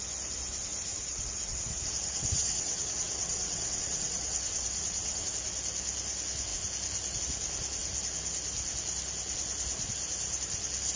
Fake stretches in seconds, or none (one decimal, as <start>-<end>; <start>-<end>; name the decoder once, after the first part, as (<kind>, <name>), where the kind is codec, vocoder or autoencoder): 0.9-5.3 (vocoder, WaveNeXt)